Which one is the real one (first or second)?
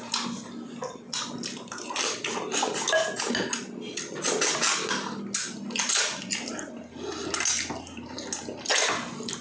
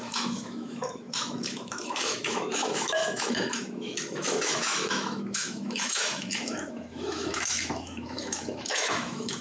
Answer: first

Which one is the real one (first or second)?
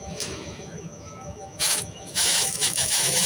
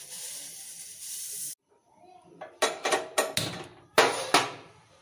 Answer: second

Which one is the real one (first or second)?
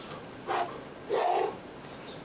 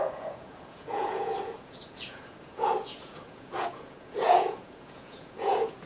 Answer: first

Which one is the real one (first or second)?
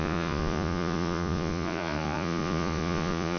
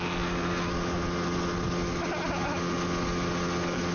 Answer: second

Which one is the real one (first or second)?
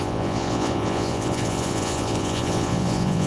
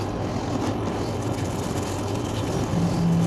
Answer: second